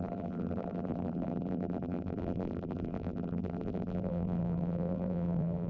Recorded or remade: remade